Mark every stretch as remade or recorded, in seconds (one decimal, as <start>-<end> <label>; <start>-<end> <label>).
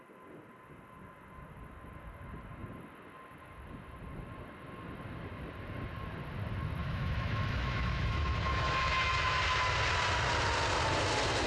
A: 0.0-6.8 recorded; 6.8-9.4 remade; 9.4-11.5 recorded